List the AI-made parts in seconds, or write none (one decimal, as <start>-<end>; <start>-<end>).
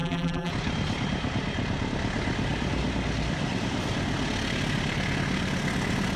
0.0-0.5